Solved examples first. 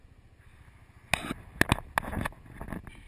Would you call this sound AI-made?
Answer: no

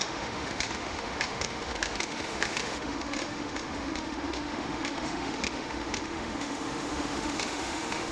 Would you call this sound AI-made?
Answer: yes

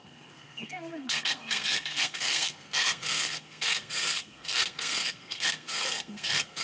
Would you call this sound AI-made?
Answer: yes